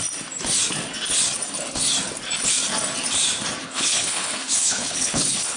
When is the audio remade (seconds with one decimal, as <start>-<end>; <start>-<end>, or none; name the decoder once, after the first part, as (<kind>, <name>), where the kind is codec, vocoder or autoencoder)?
3.6-5.6 (codec, HILCodec)